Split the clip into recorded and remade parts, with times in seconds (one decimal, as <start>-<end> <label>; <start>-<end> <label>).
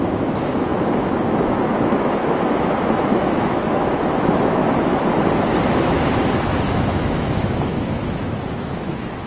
0.0-4.6 remade; 4.6-6.7 recorded; 6.7-9.3 remade